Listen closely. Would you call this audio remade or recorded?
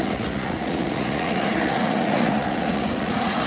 remade